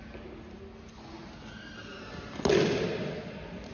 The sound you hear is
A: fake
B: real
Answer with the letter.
B